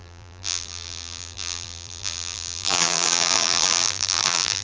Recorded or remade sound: remade